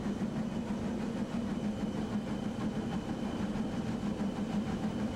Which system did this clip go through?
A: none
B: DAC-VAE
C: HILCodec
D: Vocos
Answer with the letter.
A